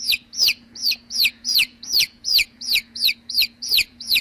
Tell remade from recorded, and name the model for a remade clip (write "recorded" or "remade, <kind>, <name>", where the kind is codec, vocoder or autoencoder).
remade, vocoder, Vocos